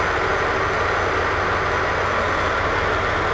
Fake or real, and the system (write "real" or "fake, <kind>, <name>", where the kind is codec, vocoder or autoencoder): real